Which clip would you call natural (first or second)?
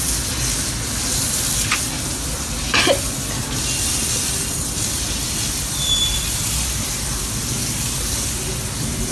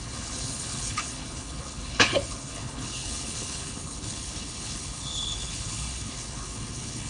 first